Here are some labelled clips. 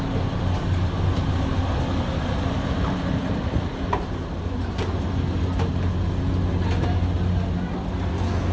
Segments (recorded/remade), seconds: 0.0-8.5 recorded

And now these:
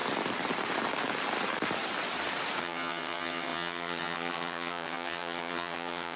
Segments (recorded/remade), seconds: 0.0-2.6 recorded; 2.6-6.2 remade